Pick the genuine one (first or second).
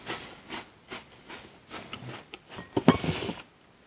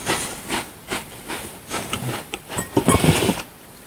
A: first